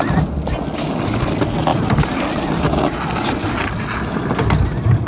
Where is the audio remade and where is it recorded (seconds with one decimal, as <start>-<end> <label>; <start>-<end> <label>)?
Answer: 0.0-5.1 recorded